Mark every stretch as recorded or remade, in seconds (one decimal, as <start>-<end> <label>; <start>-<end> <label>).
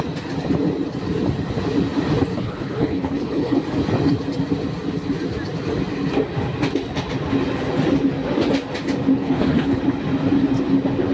0.0-2.3 recorded; 2.3-3.6 remade; 3.6-9.1 recorded; 9.1-9.8 remade; 9.8-11.1 recorded